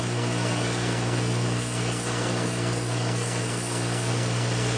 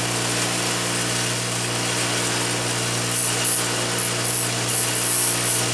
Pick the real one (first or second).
second